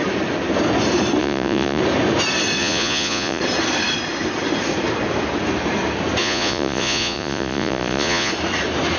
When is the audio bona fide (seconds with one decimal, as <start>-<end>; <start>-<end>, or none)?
0.0-1.2; 1.8-2.6; 3.4-6.2; 8.3-9.0

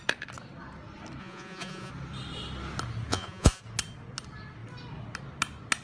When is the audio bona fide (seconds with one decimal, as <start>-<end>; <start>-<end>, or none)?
0.0-1.2; 1.9-3.1; 3.6-5.8

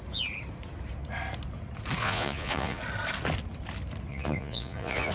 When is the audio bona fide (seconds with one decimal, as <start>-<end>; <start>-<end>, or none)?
0.0-2.0; 2.8-4.1